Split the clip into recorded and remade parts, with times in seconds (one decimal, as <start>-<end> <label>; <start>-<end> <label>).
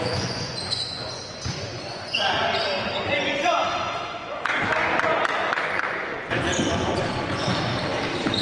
0.0-7.7 remade; 7.7-8.4 recorded